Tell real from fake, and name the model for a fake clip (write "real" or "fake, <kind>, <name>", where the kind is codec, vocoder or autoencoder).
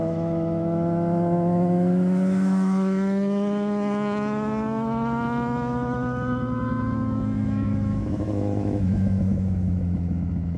fake, autoencoder, DAC-VAE